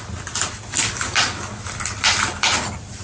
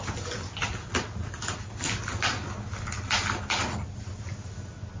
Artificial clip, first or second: first